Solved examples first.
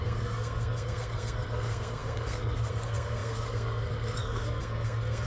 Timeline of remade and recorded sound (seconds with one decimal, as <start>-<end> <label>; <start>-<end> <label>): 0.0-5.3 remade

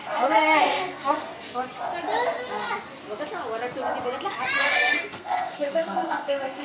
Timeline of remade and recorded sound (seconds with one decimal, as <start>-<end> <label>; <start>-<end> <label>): 0.0-1.3 remade; 1.3-4.6 recorded; 4.6-6.6 remade

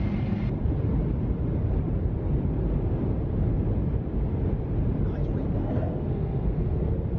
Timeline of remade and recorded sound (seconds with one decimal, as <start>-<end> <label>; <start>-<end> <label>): 0.0-5.6 recorded; 5.6-6.8 remade; 6.8-7.2 recorded

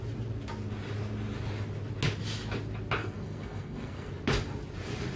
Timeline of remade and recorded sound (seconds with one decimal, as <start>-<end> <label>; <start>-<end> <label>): 0.0-3.0 recorded; 3.0-4.1 remade; 4.1-5.2 recorded

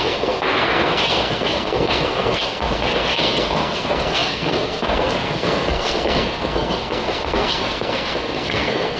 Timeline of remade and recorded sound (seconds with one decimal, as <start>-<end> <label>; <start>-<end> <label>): 0.0-9.0 remade

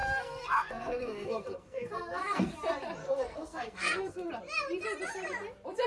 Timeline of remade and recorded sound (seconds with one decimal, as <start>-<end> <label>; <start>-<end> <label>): 0.0-2.5 remade; 2.5-3.0 recorded; 3.0-4.3 remade; 4.3-5.9 recorded

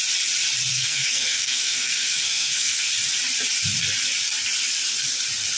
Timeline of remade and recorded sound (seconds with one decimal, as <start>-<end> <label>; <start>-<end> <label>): 0.0-0.7 recorded; 0.7-2.9 remade; 2.9-5.6 recorded